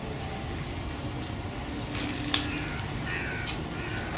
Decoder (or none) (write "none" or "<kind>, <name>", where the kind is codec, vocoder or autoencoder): none